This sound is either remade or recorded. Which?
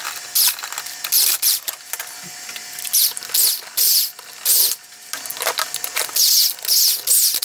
recorded